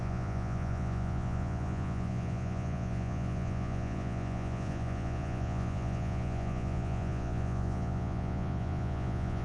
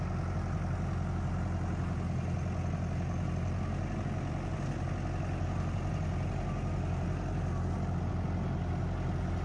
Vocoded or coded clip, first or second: first